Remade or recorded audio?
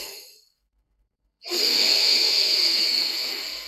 remade